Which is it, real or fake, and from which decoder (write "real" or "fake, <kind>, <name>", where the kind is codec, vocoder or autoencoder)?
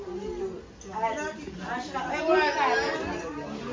real